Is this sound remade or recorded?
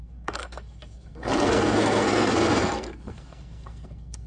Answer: remade